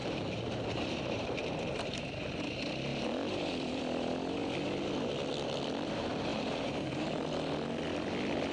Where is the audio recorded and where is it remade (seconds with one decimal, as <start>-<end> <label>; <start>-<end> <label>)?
0.0-2.4 remade; 2.4-2.9 recorded; 2.9-3.8 remade; 3.8-6.3 recorded; 6.3-7.2 remade; 7.2-8.5 recorded